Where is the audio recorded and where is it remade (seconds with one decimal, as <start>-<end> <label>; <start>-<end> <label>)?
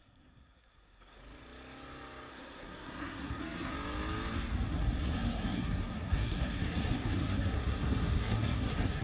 0.0-1.2 remade; 1.2-2.3 recorded; 2.3-3.7 remade; 3.7-4.7 recorded; 4.7-9.0 remade